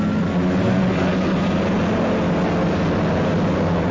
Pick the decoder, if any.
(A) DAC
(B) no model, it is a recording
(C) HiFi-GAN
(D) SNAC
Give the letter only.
B